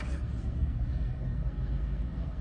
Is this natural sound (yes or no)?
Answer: no